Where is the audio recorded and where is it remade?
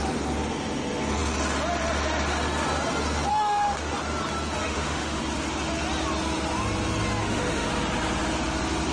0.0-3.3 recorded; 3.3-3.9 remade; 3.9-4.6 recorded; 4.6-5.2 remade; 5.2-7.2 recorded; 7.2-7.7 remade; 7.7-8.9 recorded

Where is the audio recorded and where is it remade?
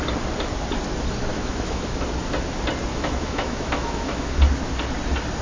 0.0-1.3 recorded; 1.3-2.0 remade; 2.0-2.9 recorded; 2.9-4.3 remade; 4.3-5.4 recorded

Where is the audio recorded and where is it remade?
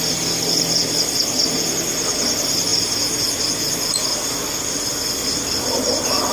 0.0-6.3 recorded